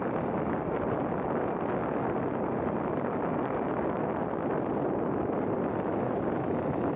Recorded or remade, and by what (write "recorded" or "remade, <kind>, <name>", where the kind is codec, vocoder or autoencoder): recorded